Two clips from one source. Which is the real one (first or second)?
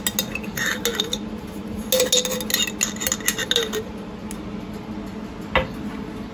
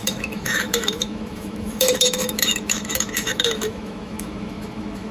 first